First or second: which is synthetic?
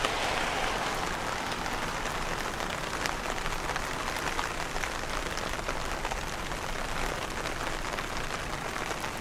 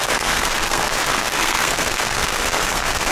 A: second